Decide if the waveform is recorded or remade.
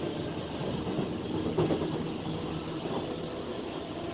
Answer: recorded